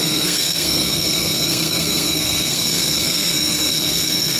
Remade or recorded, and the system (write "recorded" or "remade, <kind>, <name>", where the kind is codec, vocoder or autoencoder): remade, codec, SNAC